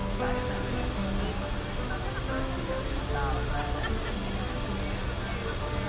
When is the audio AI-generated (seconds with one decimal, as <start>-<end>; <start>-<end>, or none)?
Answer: none